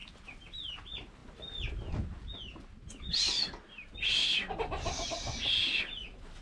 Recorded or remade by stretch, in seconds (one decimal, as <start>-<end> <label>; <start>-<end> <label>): 0.0-6.4 recorded